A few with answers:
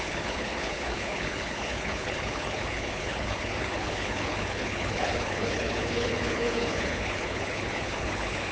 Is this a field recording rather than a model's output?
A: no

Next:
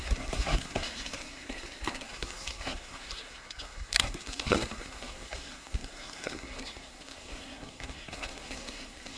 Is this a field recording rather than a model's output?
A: no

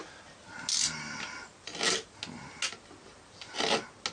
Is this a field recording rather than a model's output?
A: yes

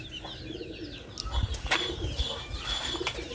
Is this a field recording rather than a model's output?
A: yes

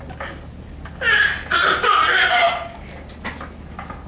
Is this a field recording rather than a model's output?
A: yes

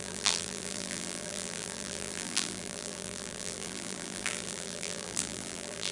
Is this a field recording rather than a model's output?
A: no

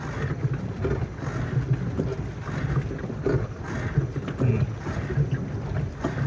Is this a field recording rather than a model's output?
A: yes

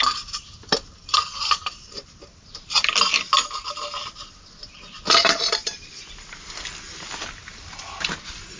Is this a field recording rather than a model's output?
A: yes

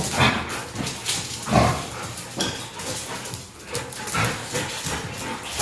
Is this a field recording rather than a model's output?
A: yes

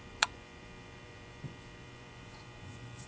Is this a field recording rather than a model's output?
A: no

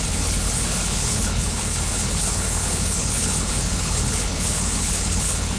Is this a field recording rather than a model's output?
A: no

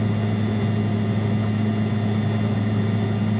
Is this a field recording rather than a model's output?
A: yes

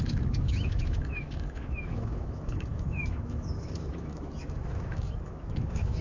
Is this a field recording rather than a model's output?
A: no